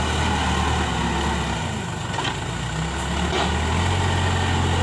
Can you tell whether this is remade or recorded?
recorded